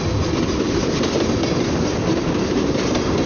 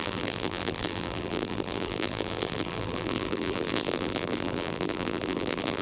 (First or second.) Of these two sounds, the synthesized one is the second